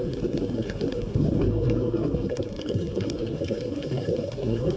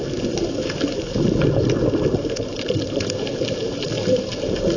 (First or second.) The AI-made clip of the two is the first